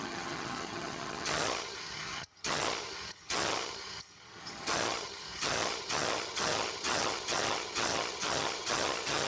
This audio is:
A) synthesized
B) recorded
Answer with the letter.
A